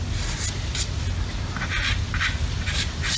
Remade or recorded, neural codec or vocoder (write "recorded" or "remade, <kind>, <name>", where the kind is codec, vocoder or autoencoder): recorded